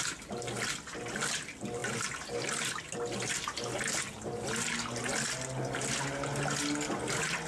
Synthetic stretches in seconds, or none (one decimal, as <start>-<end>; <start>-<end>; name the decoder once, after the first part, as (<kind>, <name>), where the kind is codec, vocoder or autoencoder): none